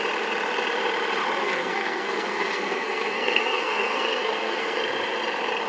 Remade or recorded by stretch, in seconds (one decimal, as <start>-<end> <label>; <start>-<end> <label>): 0.0-1.4 recorded; 1.4-4.8 remade; 4.8-5.7 recorded